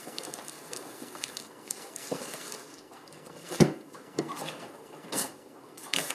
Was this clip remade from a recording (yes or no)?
yes